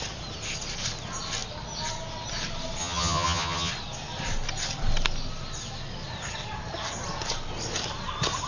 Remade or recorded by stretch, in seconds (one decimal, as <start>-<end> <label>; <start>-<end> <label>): 0.0-2.8 recorded; 2.8-3.7 remade; 3.7-8.5 recorded